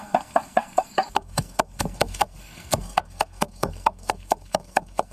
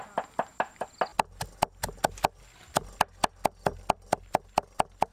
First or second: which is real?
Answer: second